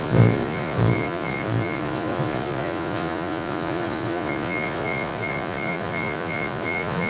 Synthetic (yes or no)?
yes